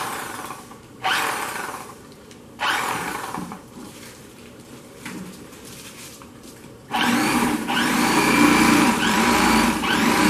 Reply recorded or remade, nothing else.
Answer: remade